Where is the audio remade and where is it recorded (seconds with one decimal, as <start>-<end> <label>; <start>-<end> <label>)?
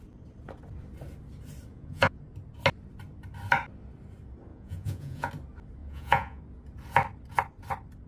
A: 0.0-1.7 recorded; 1.7-2.2 remade; 2.2-4.5 recorded; 4.5-5.3 remade; 5.3-5.8 recorded; 5.8-6.4 remade; 6.4-8.1 recorded